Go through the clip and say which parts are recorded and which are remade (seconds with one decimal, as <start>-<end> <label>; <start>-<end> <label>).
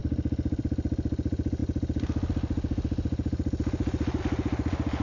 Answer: 0.0-5.0 recorded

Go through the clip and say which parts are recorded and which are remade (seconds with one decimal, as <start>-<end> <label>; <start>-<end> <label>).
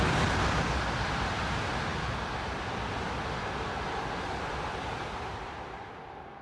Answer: 0.0-6.4 recorded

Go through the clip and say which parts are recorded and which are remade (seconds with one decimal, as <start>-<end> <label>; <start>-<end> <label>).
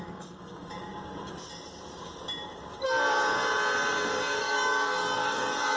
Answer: 0.0-0.9 remade; 0.9-4.4 recorded; 4.4-5.8 remade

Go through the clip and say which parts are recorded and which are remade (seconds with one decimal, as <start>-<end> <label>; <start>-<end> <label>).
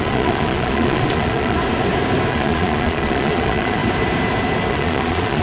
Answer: 0.0-1.6 remade; 1.6-2.3 recorded; 2.3-3.8 remade; 3.8-4.7 recorded; 4.7-5.4 remade